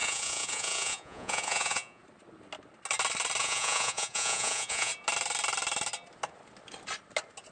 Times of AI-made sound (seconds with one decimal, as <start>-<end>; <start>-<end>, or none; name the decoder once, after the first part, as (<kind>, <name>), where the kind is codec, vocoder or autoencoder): 0.0-2.0 (vocoder, Vocos); 3.4-4.9